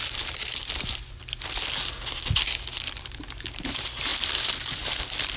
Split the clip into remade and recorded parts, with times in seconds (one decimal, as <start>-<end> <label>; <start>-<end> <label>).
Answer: 0.0-1.2 remade; 1.2-2.8 recorded; 2.8-5.4 remade